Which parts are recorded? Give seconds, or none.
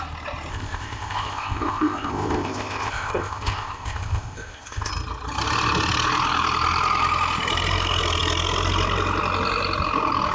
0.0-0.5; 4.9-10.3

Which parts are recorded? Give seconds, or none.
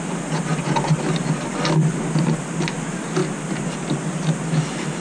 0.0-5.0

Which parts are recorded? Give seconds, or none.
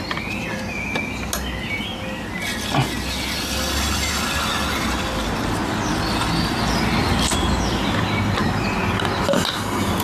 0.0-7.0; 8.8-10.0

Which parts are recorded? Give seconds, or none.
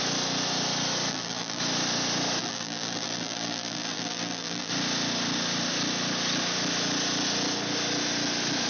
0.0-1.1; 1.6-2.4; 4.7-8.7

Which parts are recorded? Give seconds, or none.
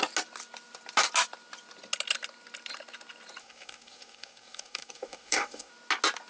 0.0-3.4; 5.7-6.3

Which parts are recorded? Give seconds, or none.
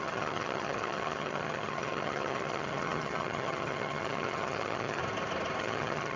5.0-5.6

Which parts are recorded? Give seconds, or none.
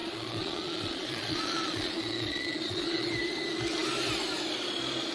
3.1-5.1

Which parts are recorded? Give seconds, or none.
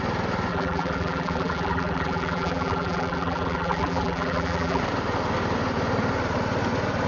0.0-0.5; 4.8-7.1